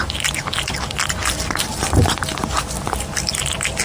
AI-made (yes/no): no